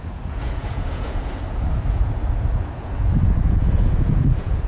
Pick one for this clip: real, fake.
fake